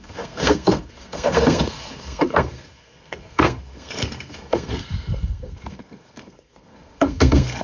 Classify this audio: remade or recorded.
remade